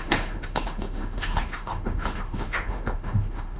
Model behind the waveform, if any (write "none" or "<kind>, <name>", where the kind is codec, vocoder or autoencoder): autoencoder, DAC-VAE